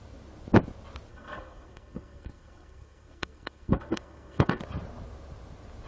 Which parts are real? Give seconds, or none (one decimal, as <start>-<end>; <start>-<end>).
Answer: 0.0-1.1; 4.6-5.9